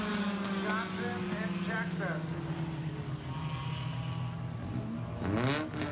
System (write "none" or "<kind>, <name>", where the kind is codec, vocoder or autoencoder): none